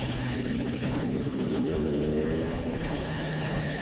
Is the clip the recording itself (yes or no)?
no